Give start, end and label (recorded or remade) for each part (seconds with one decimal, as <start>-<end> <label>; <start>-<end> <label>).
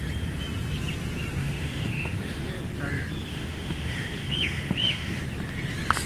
0.0-1.4 recorded; 1.4-2.5 remade; 2.5-3.3 recorded; 3.3-5.2 remade; 5.2-6.1 recorded